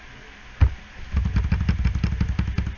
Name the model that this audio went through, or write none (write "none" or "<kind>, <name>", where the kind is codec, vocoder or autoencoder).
none